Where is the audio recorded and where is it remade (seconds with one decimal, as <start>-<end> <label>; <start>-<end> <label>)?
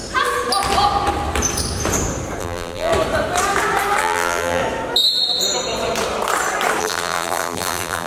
0.0-2.4 recorded; 2.4-2.9 remade; 2.9-4.0 recorded; 4.0-4.6 remade; 4.6-6.8 recorded; 6.8-8.1 remade